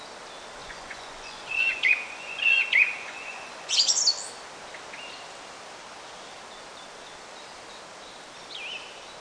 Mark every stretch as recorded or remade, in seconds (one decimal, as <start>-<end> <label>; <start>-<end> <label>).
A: 0.0-0.6 recorded; 0.6-4.0 remade; 4.0-9.2 recorded